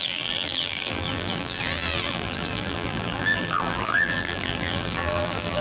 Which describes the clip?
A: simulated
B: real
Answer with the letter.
A